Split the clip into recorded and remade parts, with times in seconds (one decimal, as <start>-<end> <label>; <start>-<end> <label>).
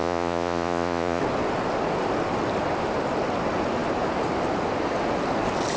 0.0-1.2 remade; 1.2-5.8 recorded